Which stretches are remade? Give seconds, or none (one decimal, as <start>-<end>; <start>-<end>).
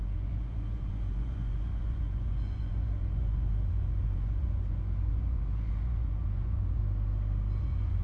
0.0-6.8; 7.6-8.0